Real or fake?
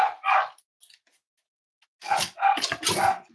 real